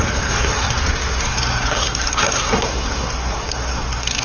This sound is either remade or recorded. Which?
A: remade